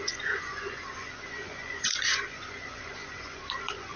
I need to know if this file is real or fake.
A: fake